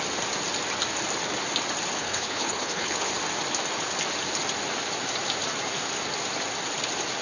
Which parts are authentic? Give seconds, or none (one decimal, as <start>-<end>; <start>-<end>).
0.0-2.0; 3.1-7.2